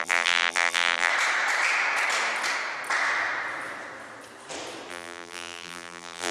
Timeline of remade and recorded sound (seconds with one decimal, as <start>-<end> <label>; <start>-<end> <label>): 0.0-1.1 remade; 1.1-4.9 recorded; 4.9-6.3 remade